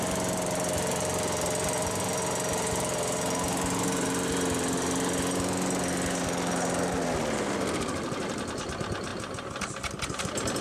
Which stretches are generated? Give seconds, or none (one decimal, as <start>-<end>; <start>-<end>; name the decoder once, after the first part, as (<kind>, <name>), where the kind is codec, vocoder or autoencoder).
none